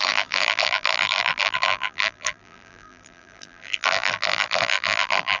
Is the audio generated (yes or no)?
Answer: yes